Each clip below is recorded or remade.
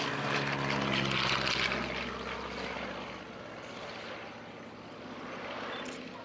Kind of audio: recorded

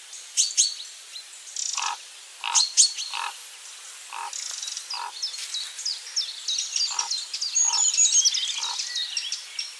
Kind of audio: recorded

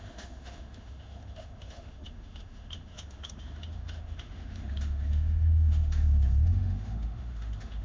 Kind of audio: remade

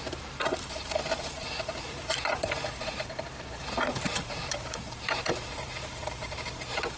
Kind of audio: remade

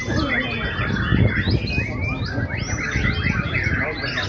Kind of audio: recorded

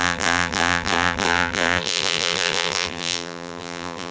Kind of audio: remade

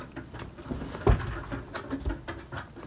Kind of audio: recorded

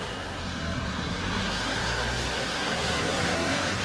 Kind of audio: remade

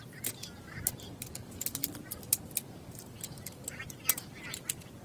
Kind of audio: recorded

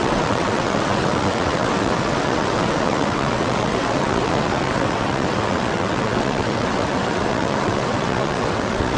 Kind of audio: remade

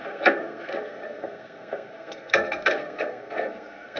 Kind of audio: remade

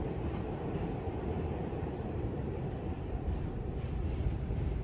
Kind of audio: remade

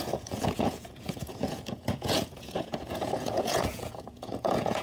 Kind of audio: remade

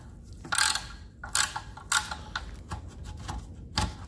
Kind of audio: recorded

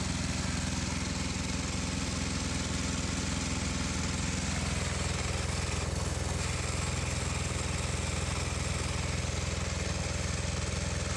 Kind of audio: recorded